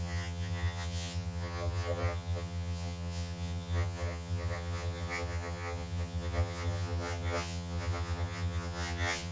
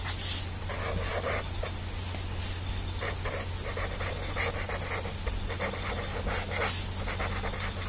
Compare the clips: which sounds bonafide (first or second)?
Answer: second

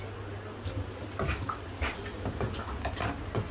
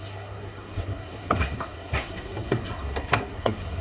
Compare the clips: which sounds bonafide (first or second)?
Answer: first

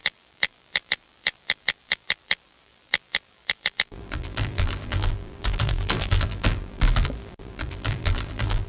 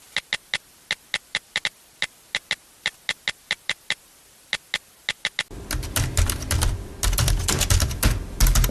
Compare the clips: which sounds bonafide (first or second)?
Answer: second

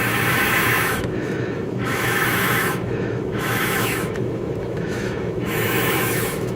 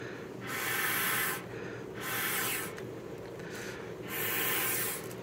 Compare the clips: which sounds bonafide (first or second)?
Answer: second